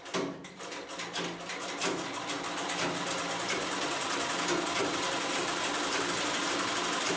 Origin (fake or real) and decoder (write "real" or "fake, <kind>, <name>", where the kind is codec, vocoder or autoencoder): real